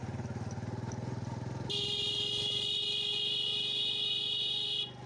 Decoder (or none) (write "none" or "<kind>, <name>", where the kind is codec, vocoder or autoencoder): none